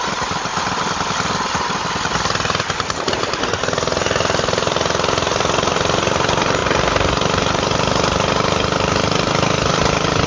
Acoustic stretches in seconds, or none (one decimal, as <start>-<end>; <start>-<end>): 0.0-10.3